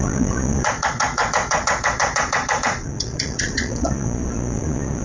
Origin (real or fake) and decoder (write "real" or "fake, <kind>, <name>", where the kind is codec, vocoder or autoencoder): fake, vocoder, Vocos